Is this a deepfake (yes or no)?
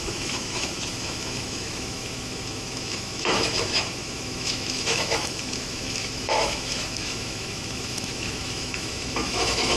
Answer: yes